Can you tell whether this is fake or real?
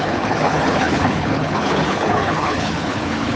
fake